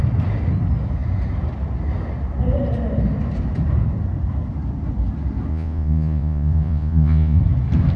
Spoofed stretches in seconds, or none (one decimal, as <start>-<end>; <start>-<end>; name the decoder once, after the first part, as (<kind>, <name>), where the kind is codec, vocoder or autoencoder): 5.5-7.4 (vocoder, Vocos)